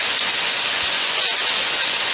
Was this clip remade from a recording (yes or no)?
yes